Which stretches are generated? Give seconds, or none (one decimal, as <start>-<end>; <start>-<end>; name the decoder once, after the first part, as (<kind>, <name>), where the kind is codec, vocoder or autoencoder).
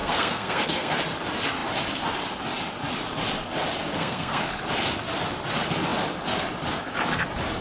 0.0-1.0 (codec, SNAC); 3.9-4.5